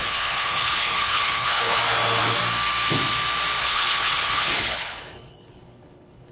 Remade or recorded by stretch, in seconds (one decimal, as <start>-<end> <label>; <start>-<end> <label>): 0.0-1.8 remade; 1.8-3.6 recorded; 3.6-6.3 remade